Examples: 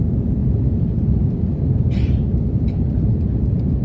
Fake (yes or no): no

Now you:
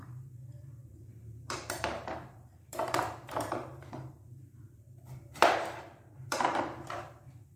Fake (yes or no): yes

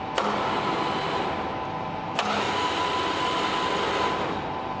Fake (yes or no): no